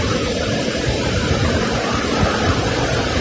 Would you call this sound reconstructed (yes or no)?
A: yes